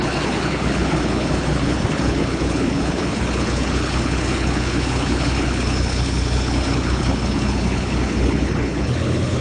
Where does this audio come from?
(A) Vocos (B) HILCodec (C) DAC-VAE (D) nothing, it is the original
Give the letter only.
B